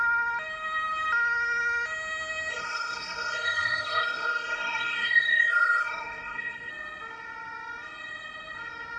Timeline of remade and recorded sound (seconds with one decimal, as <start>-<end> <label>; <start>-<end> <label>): 0.0-2.5 recorded; 2.5-6.7 remade; 6.7-9.0 recorded